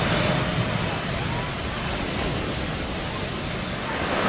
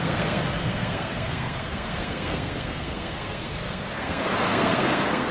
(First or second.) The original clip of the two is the first